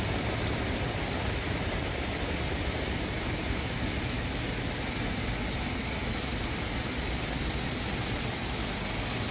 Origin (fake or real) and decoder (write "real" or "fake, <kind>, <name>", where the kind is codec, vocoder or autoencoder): real